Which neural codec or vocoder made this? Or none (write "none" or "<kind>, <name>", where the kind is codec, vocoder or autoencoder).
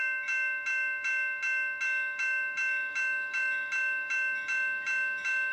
none